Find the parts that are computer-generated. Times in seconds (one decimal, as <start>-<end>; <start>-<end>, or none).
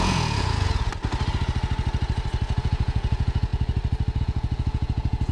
0.0-0.9; 2.6-3.5; 4.2-5.3